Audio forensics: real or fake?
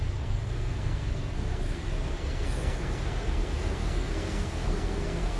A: fake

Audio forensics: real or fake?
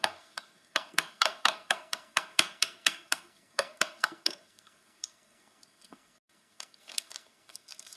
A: fake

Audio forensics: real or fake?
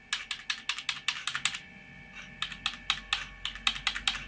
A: real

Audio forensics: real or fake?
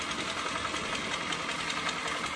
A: real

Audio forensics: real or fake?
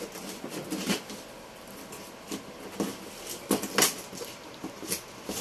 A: real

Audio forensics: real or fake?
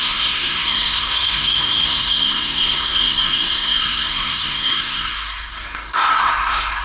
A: fake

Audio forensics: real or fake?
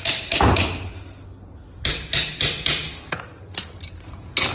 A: real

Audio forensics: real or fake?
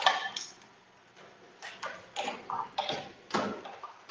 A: real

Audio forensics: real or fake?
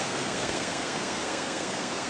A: fake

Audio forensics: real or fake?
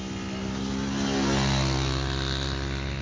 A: real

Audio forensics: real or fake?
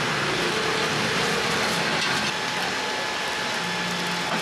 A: real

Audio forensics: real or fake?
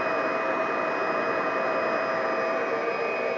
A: real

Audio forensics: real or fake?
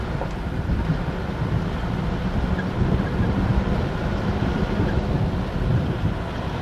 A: real